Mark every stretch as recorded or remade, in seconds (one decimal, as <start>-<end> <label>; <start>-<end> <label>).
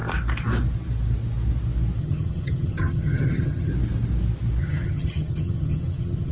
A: 0.0-2.0 recorded; 2.0-3.7 remade; 3.7-4.6 recorded; 4.6-6.3 remade